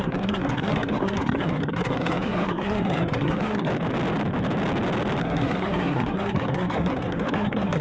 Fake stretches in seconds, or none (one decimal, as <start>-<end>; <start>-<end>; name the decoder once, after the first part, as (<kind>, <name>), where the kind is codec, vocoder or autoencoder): 0.0-3.7 (codec, SNAC); 5.2-7.8

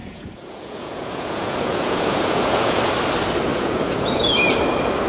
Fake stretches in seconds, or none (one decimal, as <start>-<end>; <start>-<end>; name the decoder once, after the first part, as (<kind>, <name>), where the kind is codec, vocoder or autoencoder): 0.0-2.8 (vocoder, Vocos); 3.5-4.3

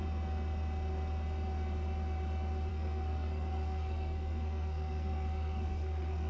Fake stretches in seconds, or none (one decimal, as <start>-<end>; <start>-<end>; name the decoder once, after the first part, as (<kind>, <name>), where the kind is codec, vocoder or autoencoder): 2.7-6.3 (codec, SNAC)

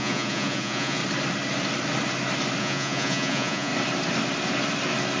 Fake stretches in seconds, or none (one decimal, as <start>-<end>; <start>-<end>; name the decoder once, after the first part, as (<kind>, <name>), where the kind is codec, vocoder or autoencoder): 0.0-1.0 (vocoder, Vocos); 2.6-3.7

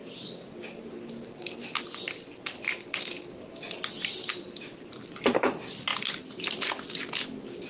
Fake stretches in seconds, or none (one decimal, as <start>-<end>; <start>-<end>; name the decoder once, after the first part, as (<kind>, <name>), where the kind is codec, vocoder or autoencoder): none

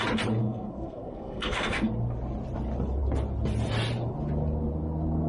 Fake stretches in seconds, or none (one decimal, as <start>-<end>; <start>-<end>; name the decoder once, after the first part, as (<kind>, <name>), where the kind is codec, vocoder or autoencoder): 0.4-1.9 (codec, SNAC)

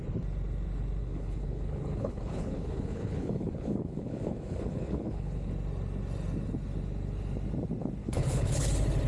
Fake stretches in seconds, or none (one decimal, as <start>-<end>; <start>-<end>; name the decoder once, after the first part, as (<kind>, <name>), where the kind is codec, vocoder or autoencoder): 1.0-5.5 (codec, HILCodec); 8.0-8.7